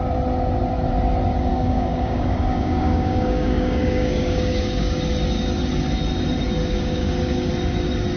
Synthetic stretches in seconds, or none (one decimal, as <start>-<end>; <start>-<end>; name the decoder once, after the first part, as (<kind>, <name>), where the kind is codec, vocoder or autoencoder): 1.5-5.0 (codec, DAC); 6.6-7.5